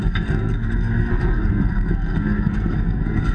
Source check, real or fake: fake